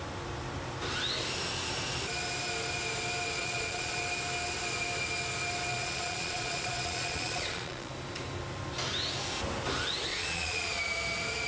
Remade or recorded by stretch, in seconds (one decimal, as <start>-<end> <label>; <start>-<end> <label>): 0.0-3.4 recorded; 3.4-4.0 remade; 4.0-5.7 recorded; 5.7-7.9 remade; 7.9-10.1 recorded; 10.1-10.8 remade; 10.8-11.5 recorded